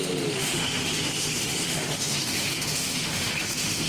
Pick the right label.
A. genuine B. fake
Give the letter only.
B